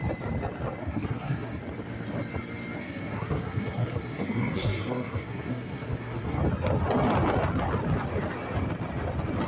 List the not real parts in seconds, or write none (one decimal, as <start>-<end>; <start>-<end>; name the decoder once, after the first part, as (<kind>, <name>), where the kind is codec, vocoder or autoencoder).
0.8-1.6 (codec, SNAC); 2.8-6.4